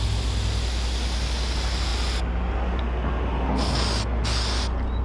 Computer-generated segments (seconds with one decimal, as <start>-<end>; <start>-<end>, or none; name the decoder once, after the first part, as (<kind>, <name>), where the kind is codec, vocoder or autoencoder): none